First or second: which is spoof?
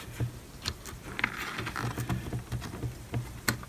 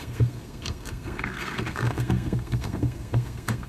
second